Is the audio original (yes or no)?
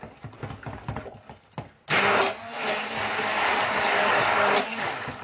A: yes